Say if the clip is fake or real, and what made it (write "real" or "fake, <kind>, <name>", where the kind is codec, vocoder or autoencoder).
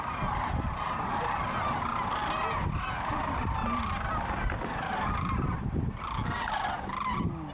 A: real